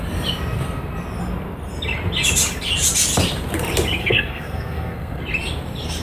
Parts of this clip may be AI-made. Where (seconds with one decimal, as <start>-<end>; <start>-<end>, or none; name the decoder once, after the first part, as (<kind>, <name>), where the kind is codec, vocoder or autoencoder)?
4.0-5.2 (codec, SNAC)